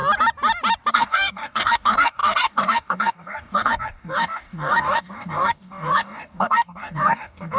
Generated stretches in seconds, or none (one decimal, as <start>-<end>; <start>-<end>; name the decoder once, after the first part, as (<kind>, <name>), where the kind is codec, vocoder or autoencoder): 0.9-7.6 (codec, DAC)